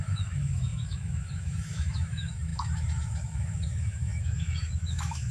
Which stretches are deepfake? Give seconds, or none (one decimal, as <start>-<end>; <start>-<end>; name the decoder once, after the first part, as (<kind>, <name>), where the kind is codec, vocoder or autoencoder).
0.0-5.3 (autoencoder, DAC-VAE)